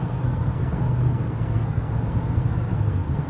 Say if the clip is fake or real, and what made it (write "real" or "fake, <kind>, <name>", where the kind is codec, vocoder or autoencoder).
fake, codec, SNAC